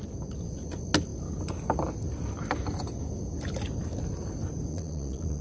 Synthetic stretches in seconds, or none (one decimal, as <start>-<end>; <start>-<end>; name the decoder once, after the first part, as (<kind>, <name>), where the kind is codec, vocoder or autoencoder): 4.7-5.4 (vocoder, Vocos)